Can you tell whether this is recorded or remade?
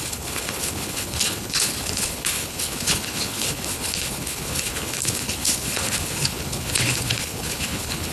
remade